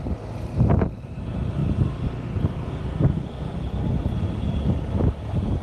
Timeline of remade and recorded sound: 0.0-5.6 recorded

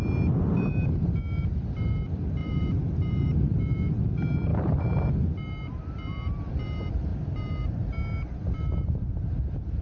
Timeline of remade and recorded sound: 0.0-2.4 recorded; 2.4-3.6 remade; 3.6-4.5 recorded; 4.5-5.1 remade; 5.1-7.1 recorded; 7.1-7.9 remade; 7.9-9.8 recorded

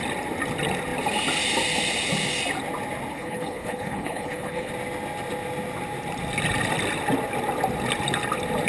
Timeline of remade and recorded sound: 0.0-3.1 recorded; 3.1-4.7 remade; 4.7-8.7 recorded

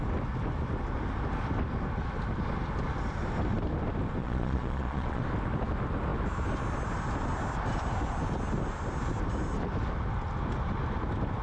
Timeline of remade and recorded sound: 0.0-4.2 recorded; 4.2-5.2 remade; 5.2-11.4 recorded

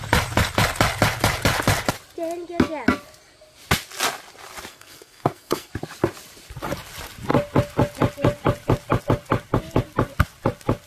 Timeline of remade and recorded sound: 0.0-4.7 recorded; 4.7-5.7 remade; 5.7-10.9 recorded

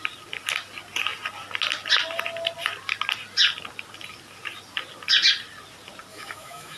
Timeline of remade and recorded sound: 0.0-6.1 recorded; 6.1-6.8 remade

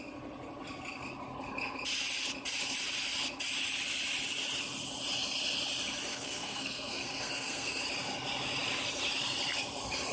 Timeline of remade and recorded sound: 0.0-6.1 recorded; 6.1-7.8 remade; 7.8-10.1 recorded